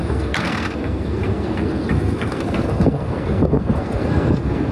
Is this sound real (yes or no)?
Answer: no